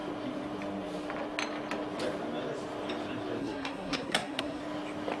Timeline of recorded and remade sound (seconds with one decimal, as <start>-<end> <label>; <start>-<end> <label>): 0.0-3.4 recorded; 3.4-4.6 remade; 4.6-5.2 recorded